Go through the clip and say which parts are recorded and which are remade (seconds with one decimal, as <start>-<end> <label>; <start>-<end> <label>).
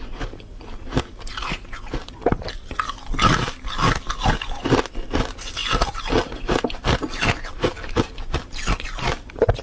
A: 0.0-9.6 recorded